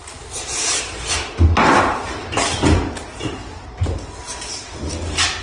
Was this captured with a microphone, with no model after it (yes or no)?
yes